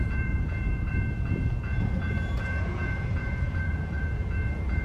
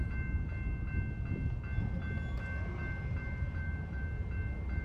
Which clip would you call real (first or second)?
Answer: second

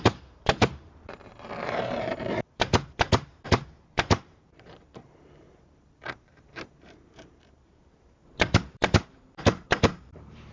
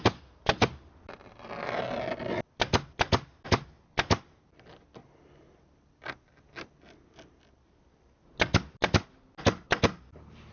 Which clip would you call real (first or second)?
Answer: second